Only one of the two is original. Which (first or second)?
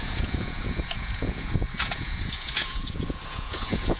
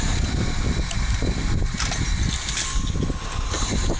second